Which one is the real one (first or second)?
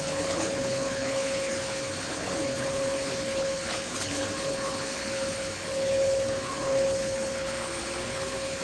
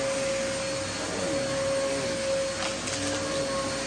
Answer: second